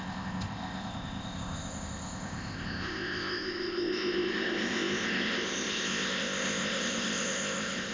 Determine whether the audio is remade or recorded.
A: remade